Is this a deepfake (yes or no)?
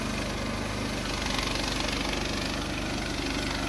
no